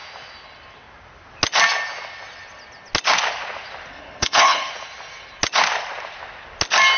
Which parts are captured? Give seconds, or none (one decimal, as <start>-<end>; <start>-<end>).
0.0-3.9; 4.7-7.0